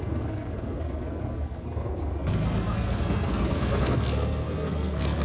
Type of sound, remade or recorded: remade